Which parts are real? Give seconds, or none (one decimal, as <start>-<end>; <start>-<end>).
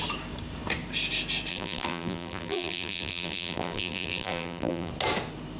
0.0-1.5; 4.9-5.6